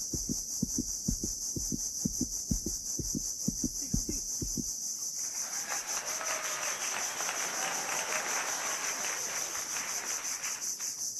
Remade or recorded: recorded